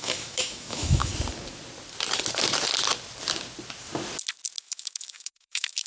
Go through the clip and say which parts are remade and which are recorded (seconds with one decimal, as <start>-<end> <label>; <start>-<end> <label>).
0.0-1.1 remade; 1.1-4.6 recorded; 4.6-5.9 remade